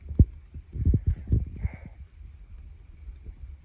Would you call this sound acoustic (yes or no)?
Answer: yes